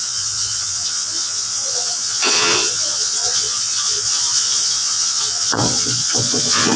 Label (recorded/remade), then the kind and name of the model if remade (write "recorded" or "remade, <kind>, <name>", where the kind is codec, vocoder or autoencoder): remade, vocoder, Vocos